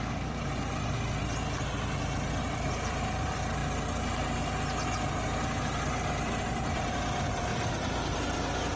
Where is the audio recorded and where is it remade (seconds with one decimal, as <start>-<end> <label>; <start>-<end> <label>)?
0.0-1.2 remade; 1.2-2.4 recorded; 2.4-3.6 remade; 3.6-6.7 recorded; 6.7-7.5 remade; 7.5-8.8 recorded